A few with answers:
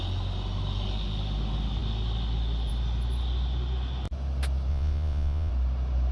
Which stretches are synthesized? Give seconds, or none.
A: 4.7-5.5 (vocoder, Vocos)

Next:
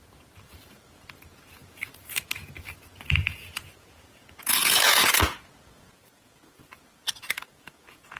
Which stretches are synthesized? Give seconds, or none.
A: 0.0-8.2 (vocoder, Vocos)

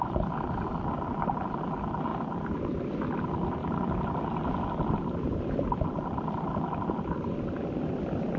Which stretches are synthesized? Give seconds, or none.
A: none

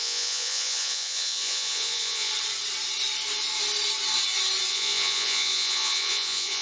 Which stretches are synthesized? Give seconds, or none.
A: 0.0-2.3 (vocoder, Vocos); 4.7-6.6

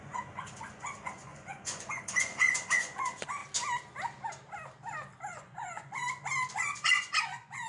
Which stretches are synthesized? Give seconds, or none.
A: 0.0-3.4 (vocoder, Vocos); 5.3-6.0; 6.5-7.7

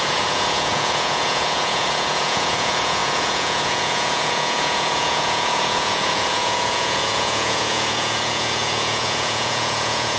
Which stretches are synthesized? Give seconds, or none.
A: 0.0-10.2 (vocoder, Vocos)

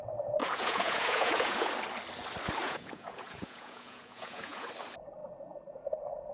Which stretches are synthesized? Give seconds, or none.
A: 0.4-1.7 (vocoder, Vocos); 2.6-4.7

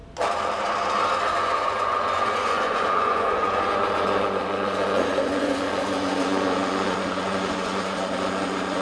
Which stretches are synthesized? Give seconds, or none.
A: 1.3-8.8 (vocoder, Vocos)